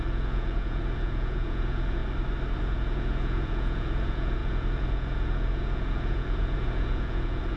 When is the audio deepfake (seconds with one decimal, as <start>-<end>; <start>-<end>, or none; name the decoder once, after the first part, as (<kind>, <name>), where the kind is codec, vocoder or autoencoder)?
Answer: 0.0-2.0 (vocoder, Vocos); 2.6-7.6